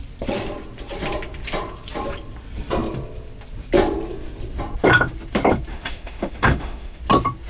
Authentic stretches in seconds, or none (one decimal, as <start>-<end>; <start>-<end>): 0.0-5.7; 7.0-7.5